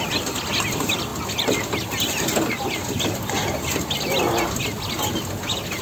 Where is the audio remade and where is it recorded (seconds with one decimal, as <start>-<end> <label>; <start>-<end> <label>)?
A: 0.0-5.8 recorded